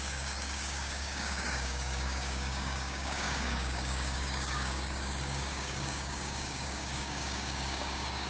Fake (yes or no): yes